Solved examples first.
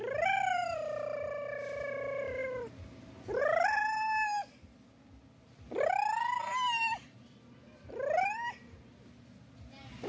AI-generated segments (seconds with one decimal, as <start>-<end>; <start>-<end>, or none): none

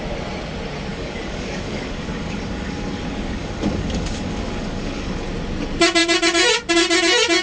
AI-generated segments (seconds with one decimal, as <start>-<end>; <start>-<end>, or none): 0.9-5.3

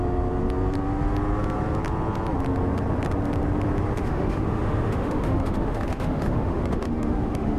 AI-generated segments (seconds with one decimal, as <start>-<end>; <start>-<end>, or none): 4.0-7.6

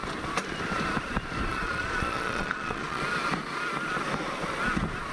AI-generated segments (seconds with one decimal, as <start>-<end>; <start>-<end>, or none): 1.5-3.0

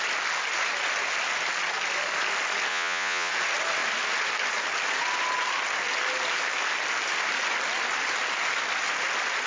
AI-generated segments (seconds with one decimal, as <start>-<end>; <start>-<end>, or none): 2.7-3.3

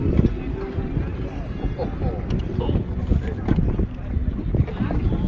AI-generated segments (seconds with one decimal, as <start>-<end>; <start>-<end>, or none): none

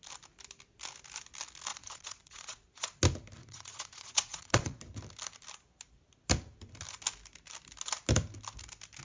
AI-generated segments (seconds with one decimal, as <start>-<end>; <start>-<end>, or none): 1.7-3.0; 3.4-4.8

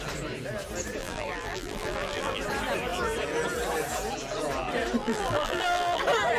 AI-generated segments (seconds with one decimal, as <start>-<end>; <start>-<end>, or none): 1.0-2.4; 5.0-6.0